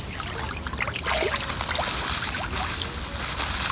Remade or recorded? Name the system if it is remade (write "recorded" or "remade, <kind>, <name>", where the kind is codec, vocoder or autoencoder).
recorded